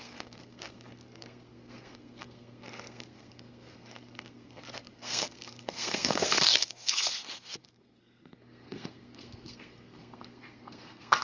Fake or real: fake